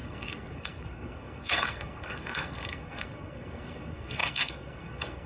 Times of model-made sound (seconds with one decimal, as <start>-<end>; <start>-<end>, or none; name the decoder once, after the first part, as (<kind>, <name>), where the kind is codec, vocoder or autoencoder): 0.0-5.3 (codec, SNAC)